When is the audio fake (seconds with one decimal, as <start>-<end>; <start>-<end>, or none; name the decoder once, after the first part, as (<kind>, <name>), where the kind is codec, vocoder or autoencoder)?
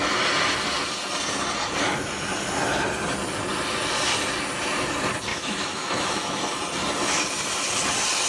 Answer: 5.3-6.4 (autoencoder, DAC-VAE)